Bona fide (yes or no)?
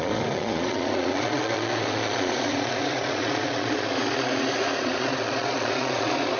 no